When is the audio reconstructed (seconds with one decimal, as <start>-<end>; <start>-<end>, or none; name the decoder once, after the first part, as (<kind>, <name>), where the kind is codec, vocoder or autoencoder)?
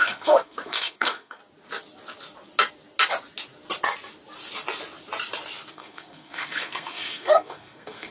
0.0-1.4 (codec, SNAC); 5.7-8.1